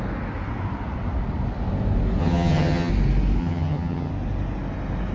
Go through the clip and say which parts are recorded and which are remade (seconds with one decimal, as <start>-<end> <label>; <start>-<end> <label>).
0.0-2.2 recorded; 2.2-2.9 remade; 2.9-3.4 recorded; 3.4-4.1 remade; 4.1-5.1 recorded